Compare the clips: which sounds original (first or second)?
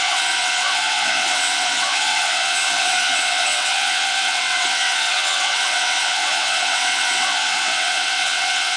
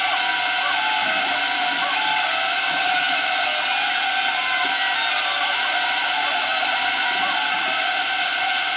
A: second